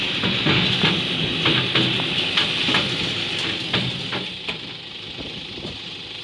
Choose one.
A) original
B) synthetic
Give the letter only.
A